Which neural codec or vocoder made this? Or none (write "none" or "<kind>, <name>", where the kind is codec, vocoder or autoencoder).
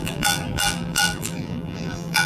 vocoder, BigVGAN v2